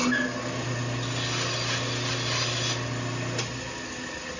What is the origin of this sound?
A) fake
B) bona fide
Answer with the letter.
B